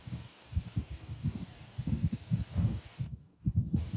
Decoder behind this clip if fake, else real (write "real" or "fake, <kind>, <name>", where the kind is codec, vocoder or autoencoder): fake, codec, DAC